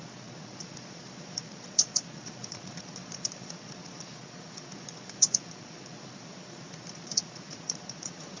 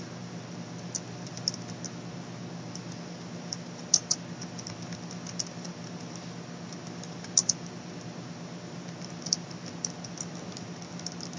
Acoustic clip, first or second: second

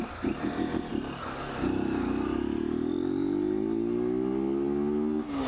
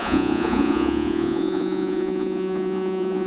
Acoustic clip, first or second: first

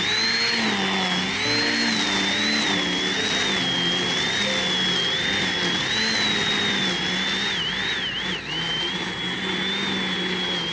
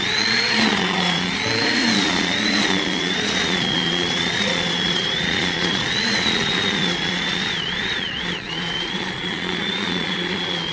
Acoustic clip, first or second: first